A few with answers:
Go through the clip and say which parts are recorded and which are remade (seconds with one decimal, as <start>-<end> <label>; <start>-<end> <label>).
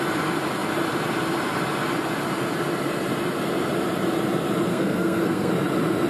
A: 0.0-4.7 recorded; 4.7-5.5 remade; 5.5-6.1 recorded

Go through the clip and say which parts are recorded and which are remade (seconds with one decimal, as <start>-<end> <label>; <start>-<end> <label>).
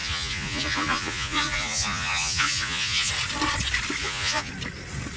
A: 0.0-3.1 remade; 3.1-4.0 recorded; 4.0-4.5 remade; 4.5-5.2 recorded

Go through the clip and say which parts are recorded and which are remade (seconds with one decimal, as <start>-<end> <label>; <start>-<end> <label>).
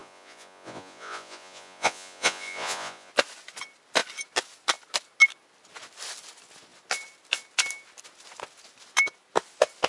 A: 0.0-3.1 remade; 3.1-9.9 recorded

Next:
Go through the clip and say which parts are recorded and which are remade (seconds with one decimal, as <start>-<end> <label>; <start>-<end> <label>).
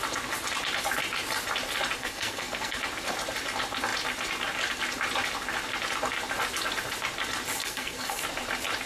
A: 0.0-2.0 recorded; 2.0-2.8 remade; 2.8-7.6 recorded; 7.6-8.2 remade; 8.2-8.9 recorded